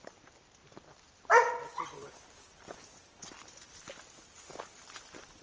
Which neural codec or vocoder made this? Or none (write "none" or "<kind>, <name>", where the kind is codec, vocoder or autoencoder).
none